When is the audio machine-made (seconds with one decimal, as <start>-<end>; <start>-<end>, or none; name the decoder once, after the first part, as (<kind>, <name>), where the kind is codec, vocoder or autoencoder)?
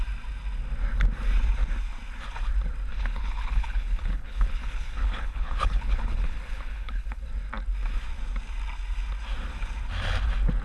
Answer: 2.9-7.2 (codec, HILCodec)